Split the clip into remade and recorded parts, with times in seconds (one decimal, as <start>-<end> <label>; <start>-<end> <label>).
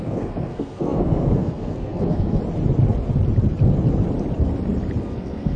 0.0-2.4 remade; 2.4-5.0 recorded; 5.0-5.6 remade